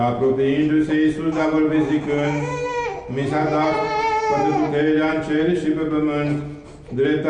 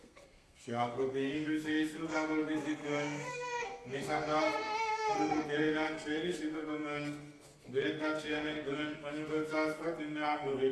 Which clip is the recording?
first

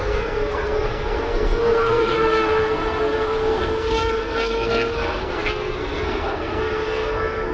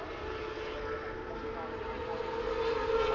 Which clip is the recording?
second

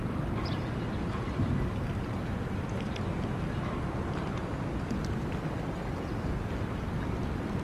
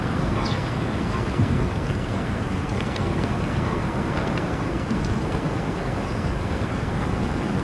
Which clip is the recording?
first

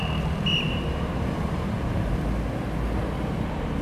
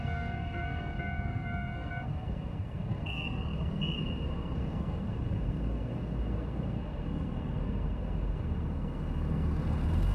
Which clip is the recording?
first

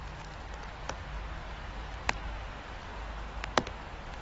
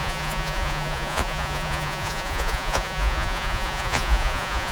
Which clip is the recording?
first